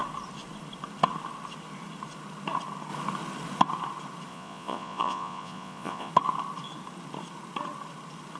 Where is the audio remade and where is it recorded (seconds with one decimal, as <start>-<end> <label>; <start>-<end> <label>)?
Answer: 0.0-4.3 recorded; 4.3-6.1 remade; 6.1-8.4 recorded